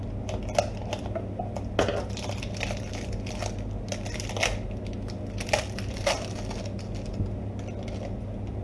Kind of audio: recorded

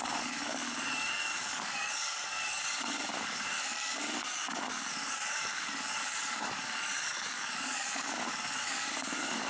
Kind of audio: remade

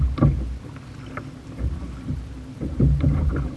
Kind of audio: recorded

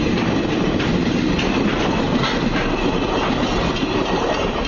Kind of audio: recorded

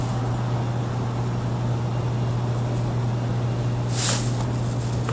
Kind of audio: recorded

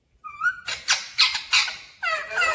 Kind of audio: recorded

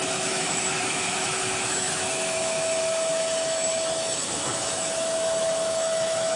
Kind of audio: remade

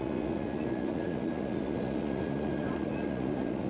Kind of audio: remade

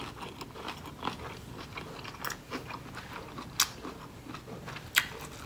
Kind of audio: recorded